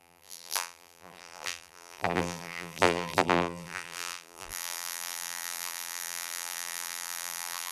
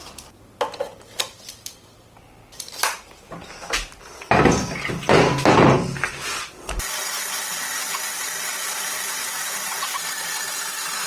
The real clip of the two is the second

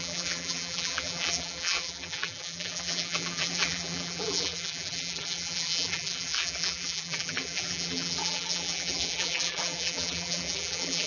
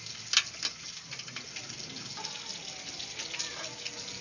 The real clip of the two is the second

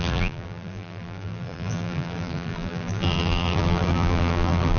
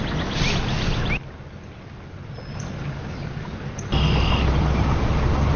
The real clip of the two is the second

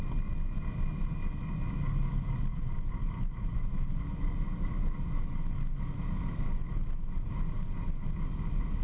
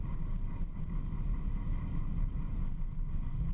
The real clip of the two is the first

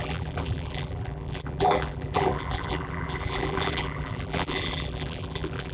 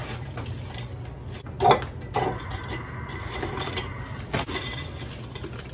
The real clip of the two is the second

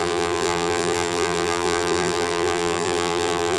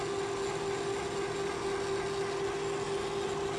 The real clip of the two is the second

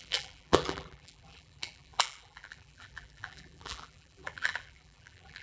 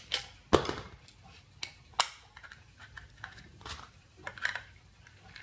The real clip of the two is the second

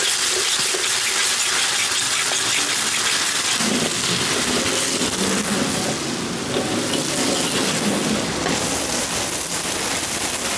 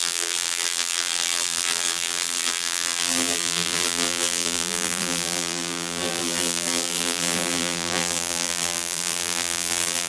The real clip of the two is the first